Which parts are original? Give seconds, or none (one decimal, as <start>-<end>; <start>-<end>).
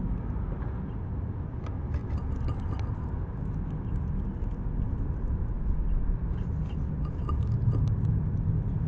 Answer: 0.0-8.9